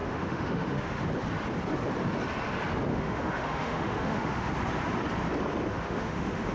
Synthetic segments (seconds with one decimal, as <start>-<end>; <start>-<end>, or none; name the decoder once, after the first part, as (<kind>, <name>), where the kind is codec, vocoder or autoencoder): 0.0-1.0 (autoencoder, DAC-VAE); 2.9-4.5; 5.7-6.5